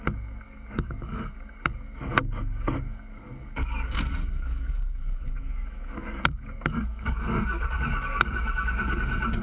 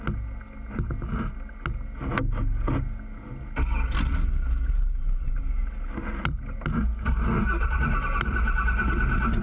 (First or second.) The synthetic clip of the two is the first